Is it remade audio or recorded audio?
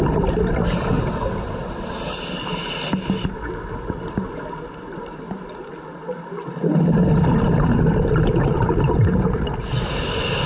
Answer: recorded